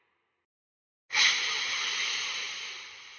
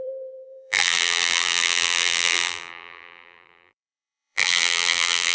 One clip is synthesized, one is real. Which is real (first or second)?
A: first